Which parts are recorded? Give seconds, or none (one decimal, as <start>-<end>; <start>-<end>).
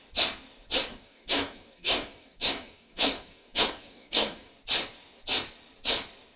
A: 0.0-0.9; 4.5-6.4